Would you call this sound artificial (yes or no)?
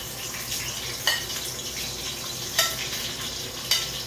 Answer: no